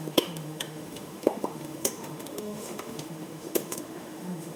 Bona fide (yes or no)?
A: no